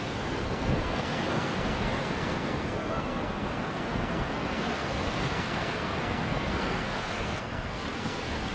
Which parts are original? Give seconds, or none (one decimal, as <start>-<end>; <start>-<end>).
none